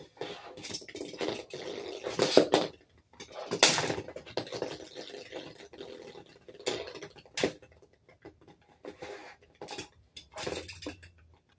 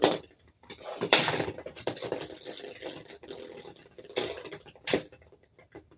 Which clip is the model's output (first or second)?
second